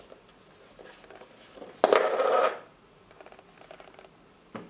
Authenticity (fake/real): real